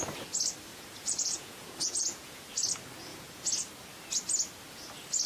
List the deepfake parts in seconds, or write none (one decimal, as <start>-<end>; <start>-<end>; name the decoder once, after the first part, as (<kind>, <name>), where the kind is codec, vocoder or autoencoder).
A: 0.7-2.5 (vocoder, Vocos); 3.1-3.7